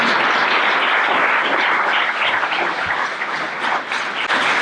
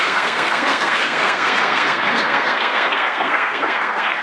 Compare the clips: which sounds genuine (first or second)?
first